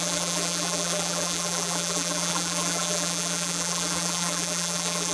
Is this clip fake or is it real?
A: fake